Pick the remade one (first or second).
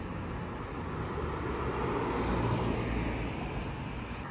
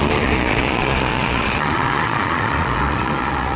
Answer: second